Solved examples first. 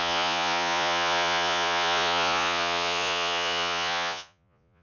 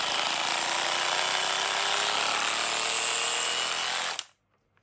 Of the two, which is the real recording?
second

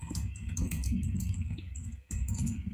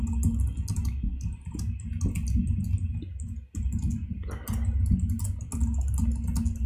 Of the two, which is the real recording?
second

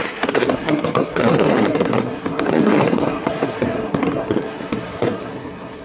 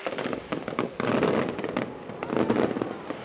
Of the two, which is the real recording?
second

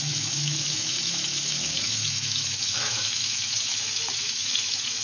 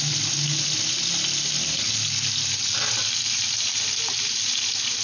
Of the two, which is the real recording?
second